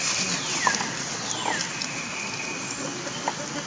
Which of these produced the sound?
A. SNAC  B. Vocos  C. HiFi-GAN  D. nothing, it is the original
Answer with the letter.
D